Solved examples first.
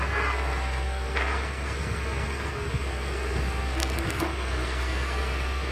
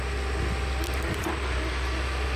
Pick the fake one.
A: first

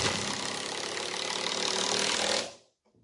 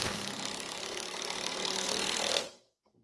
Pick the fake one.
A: second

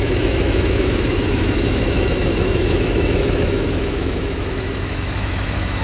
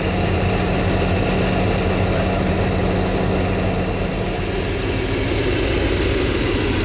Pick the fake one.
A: first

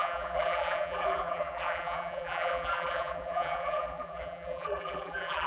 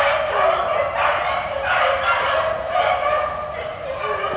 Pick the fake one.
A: first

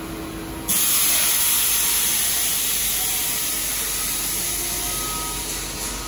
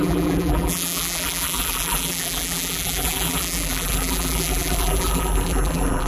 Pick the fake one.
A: second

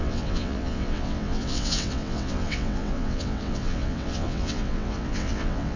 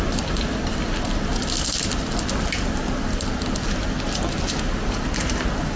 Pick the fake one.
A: first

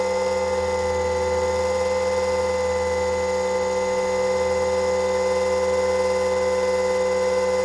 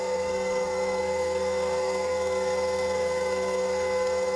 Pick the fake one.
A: second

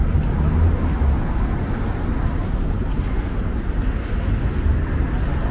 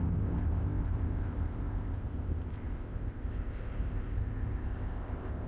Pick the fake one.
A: second